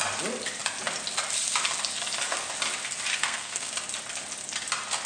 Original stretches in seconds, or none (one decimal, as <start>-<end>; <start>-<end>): 0.0-3.1; 3.7-5.1